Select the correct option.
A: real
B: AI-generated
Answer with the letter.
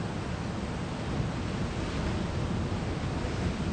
A